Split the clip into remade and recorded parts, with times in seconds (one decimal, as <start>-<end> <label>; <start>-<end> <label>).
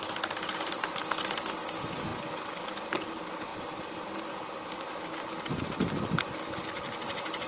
0.0-7.5 recorded